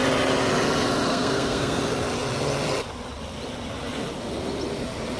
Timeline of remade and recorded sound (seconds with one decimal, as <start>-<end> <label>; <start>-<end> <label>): 0.0-1.1 recorded; 1.1-1.8 remade; 1.8-5.2 recorded